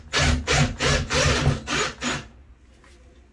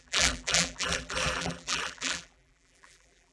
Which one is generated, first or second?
second